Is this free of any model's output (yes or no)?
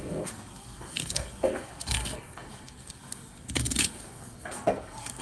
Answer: no